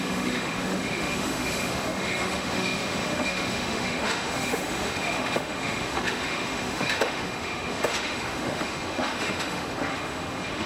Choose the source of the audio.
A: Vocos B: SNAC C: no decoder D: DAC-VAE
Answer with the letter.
D